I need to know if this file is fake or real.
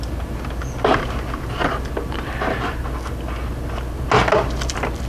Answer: real